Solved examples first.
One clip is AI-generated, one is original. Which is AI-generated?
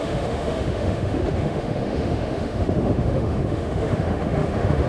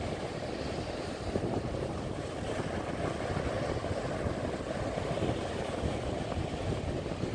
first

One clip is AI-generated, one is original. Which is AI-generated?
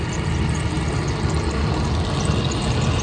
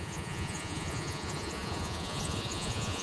second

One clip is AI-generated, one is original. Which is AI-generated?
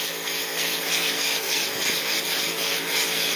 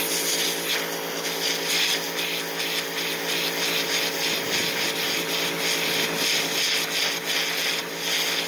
first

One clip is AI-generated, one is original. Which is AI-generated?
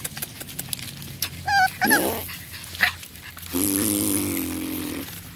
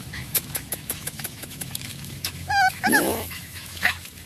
second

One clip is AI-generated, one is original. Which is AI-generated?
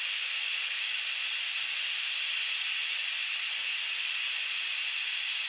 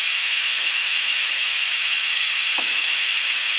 second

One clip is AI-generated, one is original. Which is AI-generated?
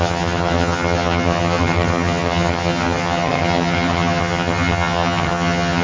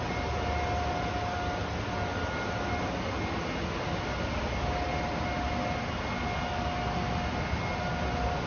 first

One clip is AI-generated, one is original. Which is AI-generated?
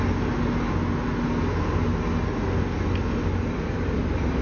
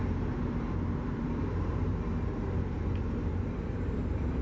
second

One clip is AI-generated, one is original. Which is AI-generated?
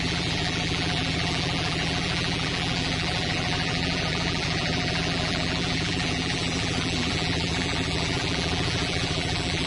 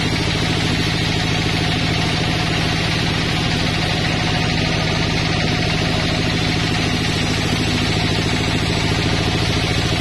first